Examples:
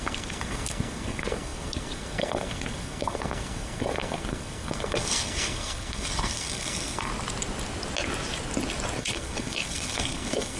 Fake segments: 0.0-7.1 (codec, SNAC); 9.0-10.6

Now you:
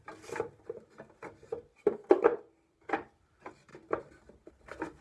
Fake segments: none

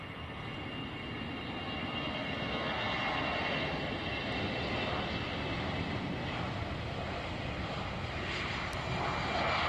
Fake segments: none

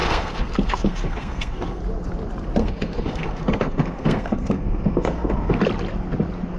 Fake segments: 0.0-1.8 (codec, SNAC); 2.6-5.6

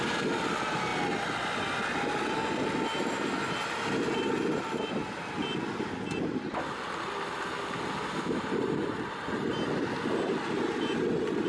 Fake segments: none

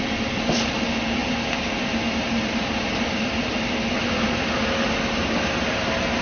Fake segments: none